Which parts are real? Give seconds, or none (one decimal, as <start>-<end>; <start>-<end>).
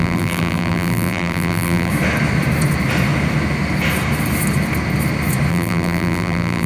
1.9-5.5